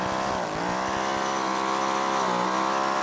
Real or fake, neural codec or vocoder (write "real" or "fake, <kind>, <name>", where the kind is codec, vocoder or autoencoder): real